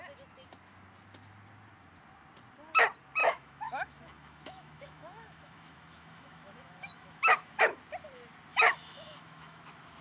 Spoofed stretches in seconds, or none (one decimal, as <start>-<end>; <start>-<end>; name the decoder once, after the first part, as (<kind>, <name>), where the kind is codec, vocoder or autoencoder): 3.2-7.6 (autoencoder, DAC-VAE); 8.5-9.6